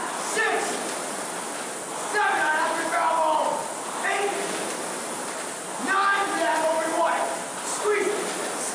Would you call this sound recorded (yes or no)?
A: yes